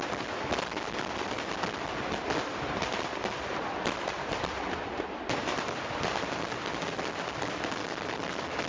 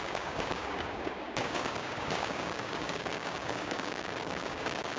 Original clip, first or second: first